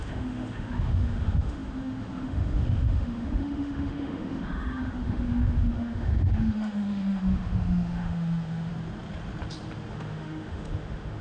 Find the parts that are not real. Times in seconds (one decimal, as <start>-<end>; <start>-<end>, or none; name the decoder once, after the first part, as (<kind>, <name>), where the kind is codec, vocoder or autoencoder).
0.0-8.7 (autoencoder, DAC-VAE); 9.9-11.2